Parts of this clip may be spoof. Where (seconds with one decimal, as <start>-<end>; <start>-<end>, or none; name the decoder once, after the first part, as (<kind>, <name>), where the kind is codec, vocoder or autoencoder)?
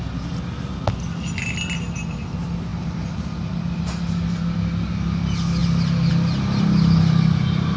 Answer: none